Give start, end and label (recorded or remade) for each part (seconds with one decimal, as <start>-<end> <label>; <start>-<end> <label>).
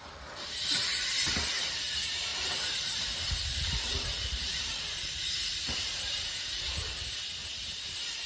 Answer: 0.0-2.3 recorded; 2.3-6.9 remade; 6.9-7.4 recorded; 7.4-8.3 remade